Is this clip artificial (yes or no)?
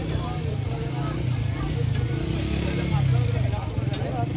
no